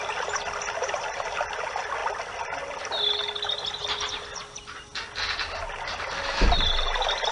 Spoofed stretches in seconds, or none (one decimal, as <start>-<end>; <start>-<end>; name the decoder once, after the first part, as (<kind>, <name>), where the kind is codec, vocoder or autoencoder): none